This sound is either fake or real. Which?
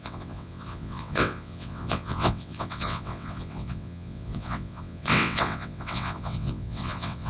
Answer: fake